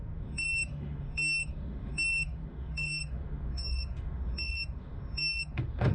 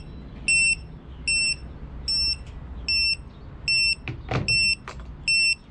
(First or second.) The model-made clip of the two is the first